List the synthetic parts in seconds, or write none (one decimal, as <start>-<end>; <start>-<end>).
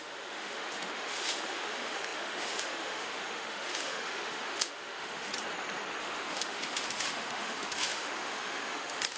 0.0-5.3; 6.0-9.2